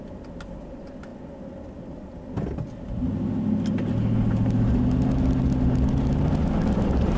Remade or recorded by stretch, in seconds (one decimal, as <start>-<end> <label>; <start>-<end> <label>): 0.0-7.2 recorded

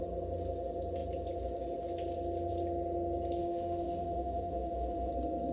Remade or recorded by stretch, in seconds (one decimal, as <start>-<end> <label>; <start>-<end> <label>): 0.0-3.4 recorded; 3.4-5.1 remade; 5.1-5.5 recorded

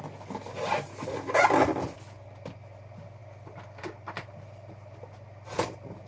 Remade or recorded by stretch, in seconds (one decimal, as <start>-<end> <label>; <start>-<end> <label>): 0.0-6.1 recorded

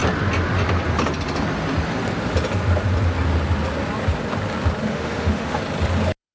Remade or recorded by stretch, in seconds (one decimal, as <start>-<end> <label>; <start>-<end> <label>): 0.0-4.9 recorded; 4.9-5.6 remade; 5.6-6.3 recorded

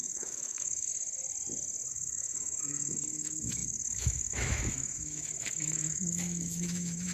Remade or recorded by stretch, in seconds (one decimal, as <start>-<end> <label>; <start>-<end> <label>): 0.0-0.9 remade; 0.9-1.9 recorded; 1.9-7.1 remade

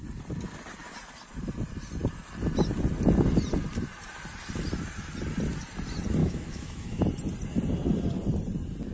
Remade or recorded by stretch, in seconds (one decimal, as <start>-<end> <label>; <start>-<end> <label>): 0.0-6.2 recorded; 6.2-7.0 remade; 7.0-8.9 recorded

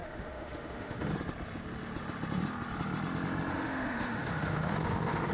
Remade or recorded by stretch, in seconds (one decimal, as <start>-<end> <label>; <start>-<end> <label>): 0.0-1.1 remade; 1.1-3.5 recorded; 3.5-5.3 remade

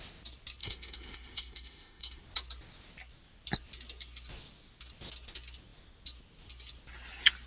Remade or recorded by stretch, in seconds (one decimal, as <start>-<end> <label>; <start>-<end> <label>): 0.0-0.6 recorded; 0.6-2.2 remade; 2.2-7.5 recorded